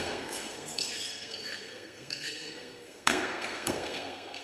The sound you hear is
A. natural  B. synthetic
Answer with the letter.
B